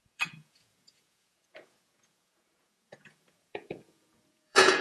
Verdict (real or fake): fake